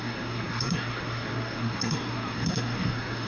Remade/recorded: remade